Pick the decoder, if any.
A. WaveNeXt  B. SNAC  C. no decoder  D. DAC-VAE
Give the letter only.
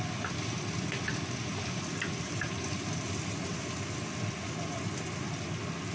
C